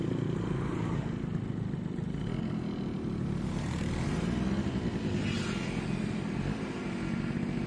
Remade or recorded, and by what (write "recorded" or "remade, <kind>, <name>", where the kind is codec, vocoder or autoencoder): recorded